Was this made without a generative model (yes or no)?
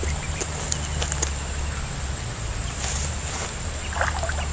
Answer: yes